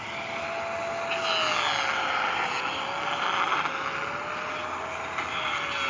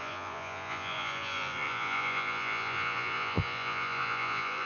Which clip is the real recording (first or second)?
first